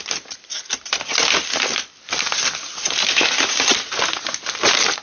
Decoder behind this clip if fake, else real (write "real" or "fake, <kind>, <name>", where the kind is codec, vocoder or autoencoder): real